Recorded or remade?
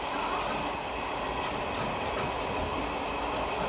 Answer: recorded